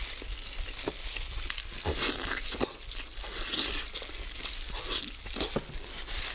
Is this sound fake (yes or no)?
no